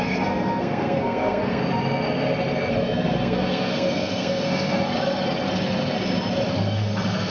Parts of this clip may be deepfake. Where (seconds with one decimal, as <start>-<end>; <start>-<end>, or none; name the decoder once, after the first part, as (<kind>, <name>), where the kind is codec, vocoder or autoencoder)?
0.0-1.6 (codec, SNAC); 2.7-4.9; 6.5-7.3